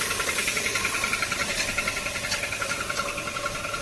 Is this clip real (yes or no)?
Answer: no